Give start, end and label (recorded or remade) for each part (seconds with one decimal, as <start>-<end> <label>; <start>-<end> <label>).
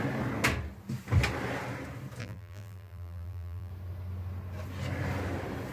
0.0-2.2 recorded; 2.2-3.7 remade; 3.7-5.7 recorded